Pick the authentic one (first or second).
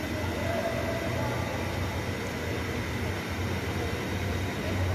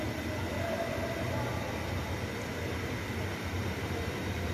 first